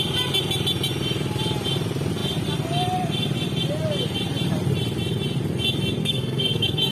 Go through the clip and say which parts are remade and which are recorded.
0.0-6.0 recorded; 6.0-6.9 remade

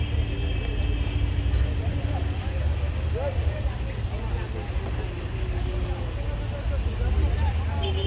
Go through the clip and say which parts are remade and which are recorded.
0.0-8.1 recorded

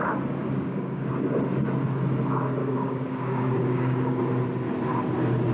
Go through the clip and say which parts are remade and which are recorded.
0.0-0.4 recorded; 0.4-1.1 remade; 1.1-2.6 recorded; 2.6-4.2 remade; 4.2-5.5 recorded

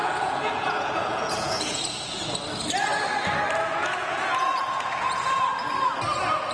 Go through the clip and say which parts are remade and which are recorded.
0.0-1.8 remade; 1.8-3.8 recorded; 3.8-5.4 remade; 5.4-6.5 recorded

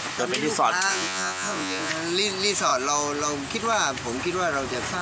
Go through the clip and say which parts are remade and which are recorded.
0.0-0.9 recorded; 0.9-1.9 remade; 1.9-5.0 recorded

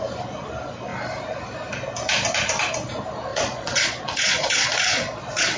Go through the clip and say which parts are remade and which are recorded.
0.0-3.3 recorded; 3.3-5.6 remade

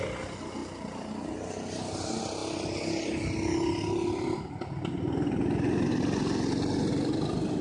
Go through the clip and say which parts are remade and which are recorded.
0.0-7.6 recorded

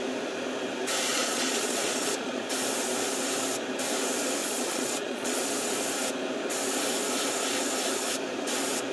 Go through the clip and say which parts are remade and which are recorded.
0.0-1.1 recorded; 1.1-2.4 remade; 2.4-4.4 recorded; 4.4-5.4 remade; 5.4-8.9 recorded